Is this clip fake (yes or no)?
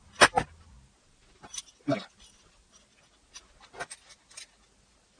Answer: no